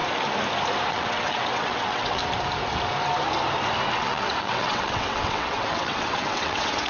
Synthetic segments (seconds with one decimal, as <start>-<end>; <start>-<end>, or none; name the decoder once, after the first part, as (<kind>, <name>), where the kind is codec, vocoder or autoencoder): 0.9-2.2 (vocoder, WaveNeXt); 3.9-6.9